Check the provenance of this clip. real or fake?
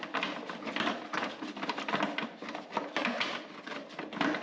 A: real